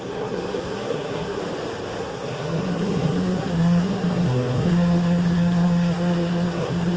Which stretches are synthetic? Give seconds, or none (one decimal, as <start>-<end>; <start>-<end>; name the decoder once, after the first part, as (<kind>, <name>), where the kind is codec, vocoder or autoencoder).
0.0-1.4 (codec, SNAC); 2.0-7.0